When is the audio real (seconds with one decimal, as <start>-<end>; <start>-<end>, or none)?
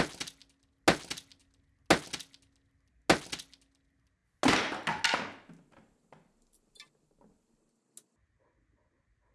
0.0-9.3